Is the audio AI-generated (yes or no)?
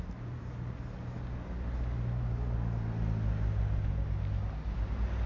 no